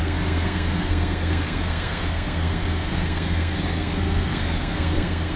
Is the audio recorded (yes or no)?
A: no